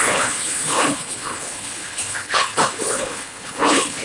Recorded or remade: remade